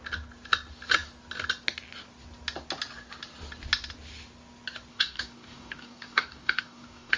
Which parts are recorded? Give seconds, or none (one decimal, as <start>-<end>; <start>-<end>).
0.0-4.9